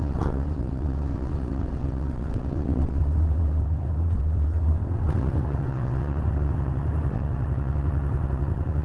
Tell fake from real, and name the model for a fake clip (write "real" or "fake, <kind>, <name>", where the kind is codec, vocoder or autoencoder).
fake, vocoder, WaveNeXt